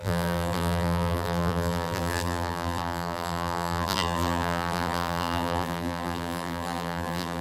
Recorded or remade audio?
remade